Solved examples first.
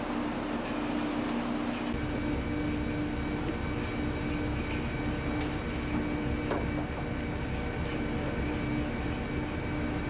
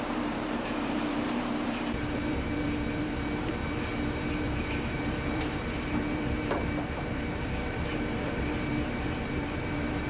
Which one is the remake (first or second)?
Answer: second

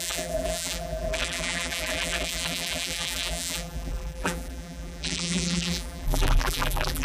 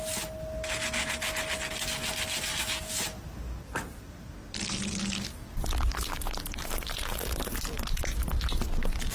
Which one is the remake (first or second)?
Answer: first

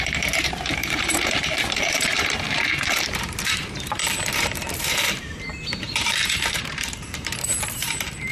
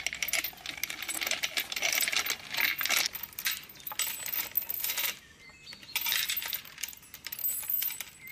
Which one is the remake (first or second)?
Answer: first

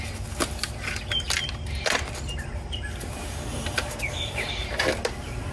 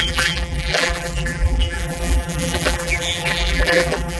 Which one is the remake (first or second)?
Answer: second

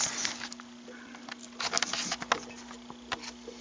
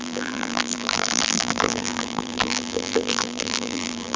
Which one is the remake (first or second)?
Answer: second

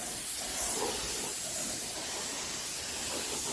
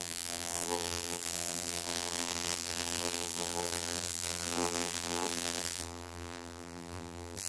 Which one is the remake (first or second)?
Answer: second